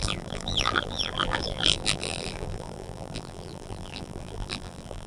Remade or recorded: remade